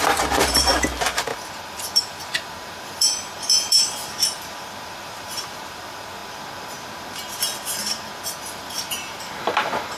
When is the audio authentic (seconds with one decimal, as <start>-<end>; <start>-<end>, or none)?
6.2-7.8

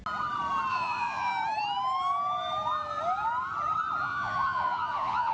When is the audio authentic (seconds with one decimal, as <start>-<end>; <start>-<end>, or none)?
0.0-0.7; 1.3-4.0

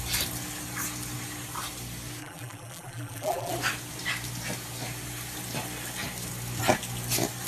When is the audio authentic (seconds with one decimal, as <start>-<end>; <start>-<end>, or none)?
0.0-2.2; 3.5-7.5

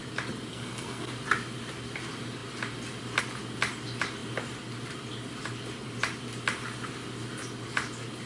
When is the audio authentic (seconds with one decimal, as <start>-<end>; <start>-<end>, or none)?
0.0-0.5; 1.1-8.3

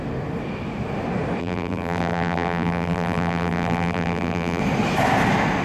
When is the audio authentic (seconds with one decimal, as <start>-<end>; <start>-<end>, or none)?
0.0-1.4; 4.6-5.6